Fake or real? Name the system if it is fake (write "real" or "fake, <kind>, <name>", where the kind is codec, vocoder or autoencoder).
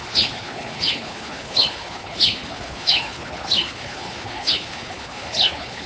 fake, codec, HILCodec